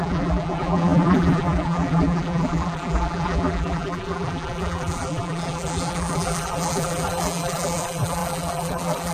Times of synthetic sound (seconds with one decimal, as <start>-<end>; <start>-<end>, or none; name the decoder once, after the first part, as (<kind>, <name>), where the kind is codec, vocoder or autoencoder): 0.0-9.1 (vocoder, BigVGAN v2)